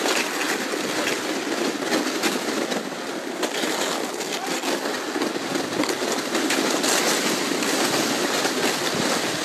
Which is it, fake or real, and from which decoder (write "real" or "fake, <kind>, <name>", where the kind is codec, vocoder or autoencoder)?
real